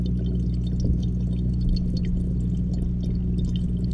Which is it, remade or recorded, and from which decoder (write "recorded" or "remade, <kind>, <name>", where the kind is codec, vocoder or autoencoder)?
recorded